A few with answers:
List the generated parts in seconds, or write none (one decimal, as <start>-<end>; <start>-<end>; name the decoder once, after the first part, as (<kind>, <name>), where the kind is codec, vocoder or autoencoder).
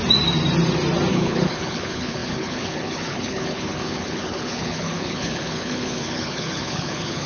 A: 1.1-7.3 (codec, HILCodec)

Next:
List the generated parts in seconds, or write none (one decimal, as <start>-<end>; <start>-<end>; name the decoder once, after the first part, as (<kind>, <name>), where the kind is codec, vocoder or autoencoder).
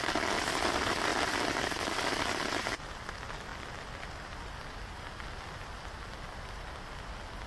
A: none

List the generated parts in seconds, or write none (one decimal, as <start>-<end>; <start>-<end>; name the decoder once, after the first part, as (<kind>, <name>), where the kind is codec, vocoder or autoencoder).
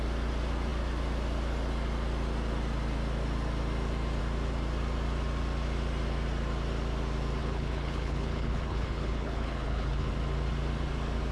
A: 7.4-10.1 (codec, HILCodec)